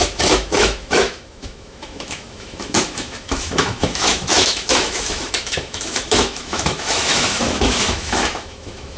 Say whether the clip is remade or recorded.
remade